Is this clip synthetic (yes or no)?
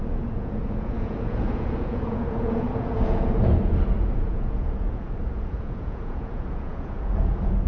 yes